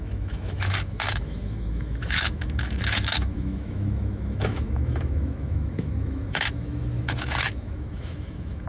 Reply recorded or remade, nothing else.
remade